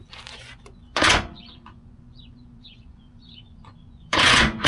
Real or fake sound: fake